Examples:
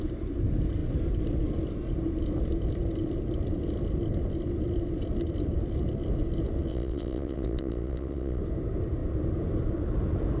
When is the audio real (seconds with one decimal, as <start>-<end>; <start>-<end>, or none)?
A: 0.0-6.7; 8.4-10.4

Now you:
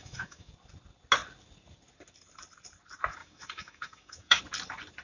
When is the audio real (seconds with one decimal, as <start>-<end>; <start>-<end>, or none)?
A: 0.5-3.2; 4.4-5.0

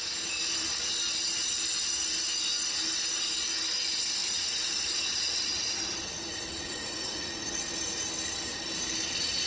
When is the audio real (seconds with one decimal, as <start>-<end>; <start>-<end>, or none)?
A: 0.0-4.2; 7.6-9.5

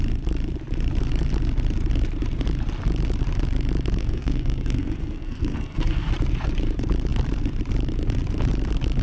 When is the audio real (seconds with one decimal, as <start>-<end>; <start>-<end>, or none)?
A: 0.0-4.0; 6.1-9.0

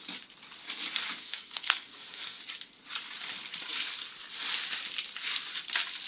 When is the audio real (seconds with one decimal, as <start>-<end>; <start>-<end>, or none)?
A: 0.0-1.2; 2.4-6.1

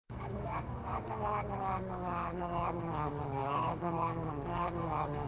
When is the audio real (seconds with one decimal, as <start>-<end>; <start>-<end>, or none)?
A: none

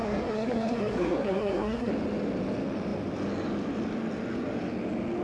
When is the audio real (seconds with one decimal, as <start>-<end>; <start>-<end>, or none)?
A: 1.9-5.2